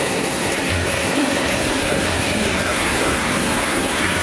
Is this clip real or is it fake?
fake